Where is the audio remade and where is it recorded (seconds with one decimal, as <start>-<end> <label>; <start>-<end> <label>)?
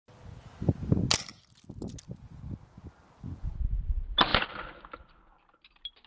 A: 0.0-6.1 recorded